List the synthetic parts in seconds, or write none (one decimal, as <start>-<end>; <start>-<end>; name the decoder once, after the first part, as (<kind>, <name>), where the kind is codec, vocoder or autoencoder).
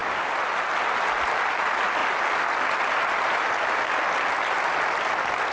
none